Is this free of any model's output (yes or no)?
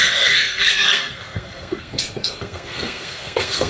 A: no